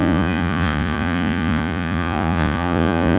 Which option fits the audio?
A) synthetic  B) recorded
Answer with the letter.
A